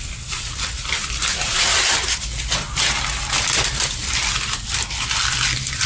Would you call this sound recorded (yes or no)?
yes